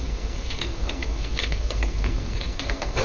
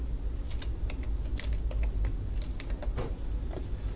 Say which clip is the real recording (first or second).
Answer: second